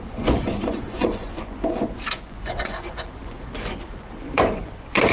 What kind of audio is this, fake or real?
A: fake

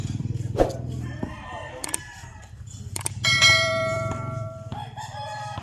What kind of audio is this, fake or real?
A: fake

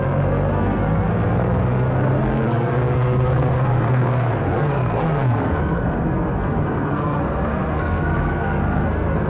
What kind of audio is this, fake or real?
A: fake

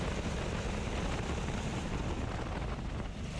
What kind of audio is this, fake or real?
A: real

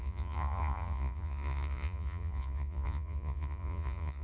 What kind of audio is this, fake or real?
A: fake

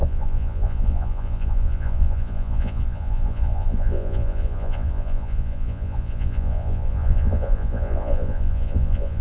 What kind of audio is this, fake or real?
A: fake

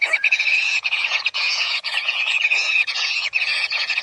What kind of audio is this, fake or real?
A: fake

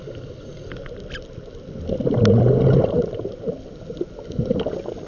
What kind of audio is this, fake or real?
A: real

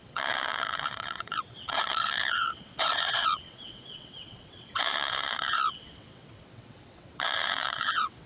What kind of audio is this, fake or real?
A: fake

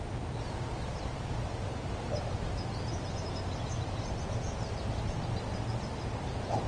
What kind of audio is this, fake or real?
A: real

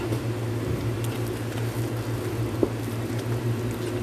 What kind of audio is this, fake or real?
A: real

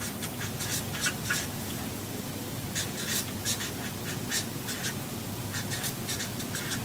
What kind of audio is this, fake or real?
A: real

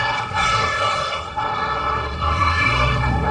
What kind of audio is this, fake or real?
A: fake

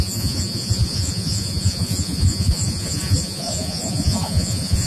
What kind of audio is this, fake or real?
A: fake